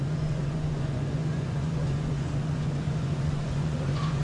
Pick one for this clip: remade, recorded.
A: remade